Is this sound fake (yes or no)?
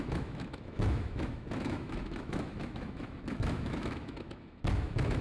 yes